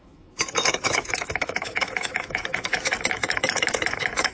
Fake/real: fake